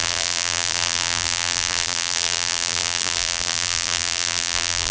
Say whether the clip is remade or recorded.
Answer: remade